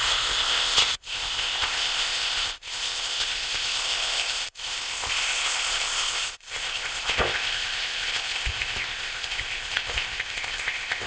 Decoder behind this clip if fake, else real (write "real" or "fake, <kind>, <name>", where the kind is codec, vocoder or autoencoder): fake, codec, ZipCodec